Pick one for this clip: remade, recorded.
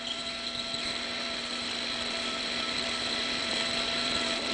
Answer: remade